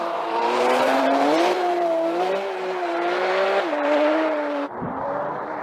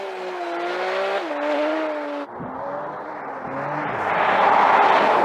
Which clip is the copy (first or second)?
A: first